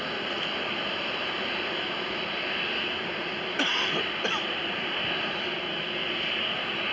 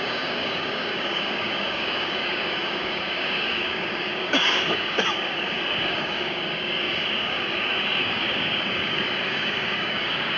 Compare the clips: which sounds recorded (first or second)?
first